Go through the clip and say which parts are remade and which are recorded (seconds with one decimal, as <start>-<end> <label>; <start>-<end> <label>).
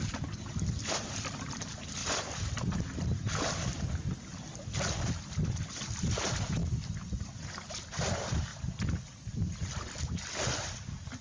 0.0-6.6 recorded; 6.6-7.7 remade; 7.7-11.2 recorded